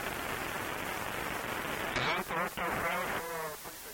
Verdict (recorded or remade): recorded